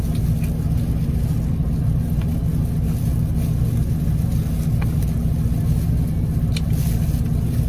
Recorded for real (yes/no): yes